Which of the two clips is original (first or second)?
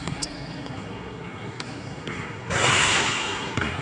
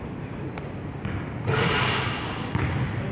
second